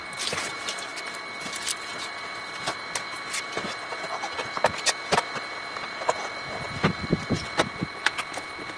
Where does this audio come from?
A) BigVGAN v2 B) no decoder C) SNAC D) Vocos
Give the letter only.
B